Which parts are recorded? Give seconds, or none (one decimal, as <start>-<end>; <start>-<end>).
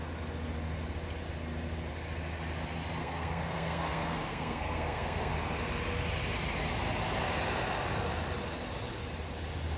0.0-3.0; 5.3-9.8